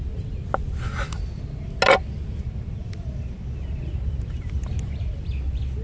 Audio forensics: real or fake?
real